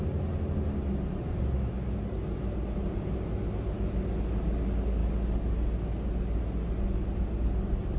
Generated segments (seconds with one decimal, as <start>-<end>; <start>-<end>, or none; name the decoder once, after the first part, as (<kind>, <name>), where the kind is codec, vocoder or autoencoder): none